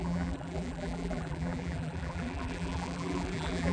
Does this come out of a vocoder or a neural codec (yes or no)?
yes